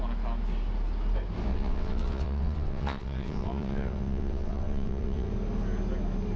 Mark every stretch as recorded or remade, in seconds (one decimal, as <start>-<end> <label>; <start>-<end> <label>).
0.0-1.5 recorded; 1.5-5.3 remade; 5.3-6.4 recorded